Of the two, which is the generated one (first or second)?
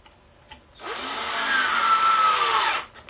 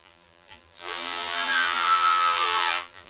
second